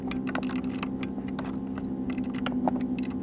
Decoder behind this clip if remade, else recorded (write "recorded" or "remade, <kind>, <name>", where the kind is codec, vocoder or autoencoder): recorded